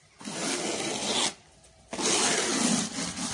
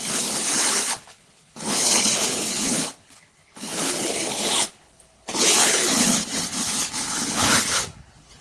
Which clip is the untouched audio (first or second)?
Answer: first